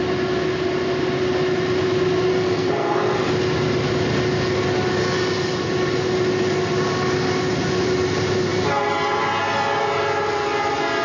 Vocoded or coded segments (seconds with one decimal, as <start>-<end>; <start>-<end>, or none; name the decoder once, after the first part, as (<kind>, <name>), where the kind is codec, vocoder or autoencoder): 2.3-3.3 (codec, SNAC)